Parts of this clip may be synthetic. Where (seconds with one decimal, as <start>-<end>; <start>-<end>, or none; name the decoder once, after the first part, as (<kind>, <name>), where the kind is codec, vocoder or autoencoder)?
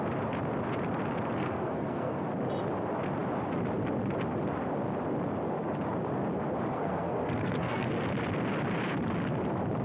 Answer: 1.4-2.2 (codec, SNAC); 6.7-7.9